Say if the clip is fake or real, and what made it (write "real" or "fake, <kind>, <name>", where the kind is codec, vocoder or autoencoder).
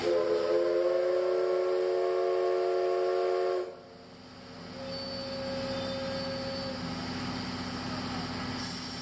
real